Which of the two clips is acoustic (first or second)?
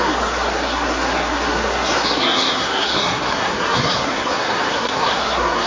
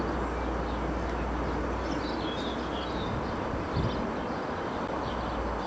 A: second